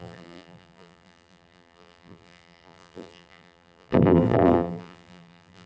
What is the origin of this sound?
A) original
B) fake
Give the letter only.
B